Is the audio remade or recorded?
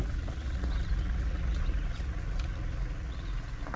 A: remade